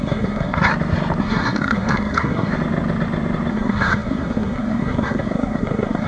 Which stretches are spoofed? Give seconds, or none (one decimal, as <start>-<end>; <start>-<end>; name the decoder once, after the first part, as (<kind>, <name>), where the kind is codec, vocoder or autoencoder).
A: 0.0-0.7 (codec, SNAC); 1.2-2.5; 3.5-6.1